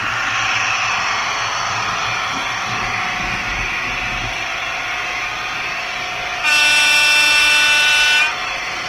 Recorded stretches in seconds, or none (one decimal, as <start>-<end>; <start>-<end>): 0.0-8.9